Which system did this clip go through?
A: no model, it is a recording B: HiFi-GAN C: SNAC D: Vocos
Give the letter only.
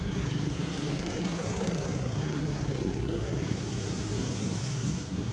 C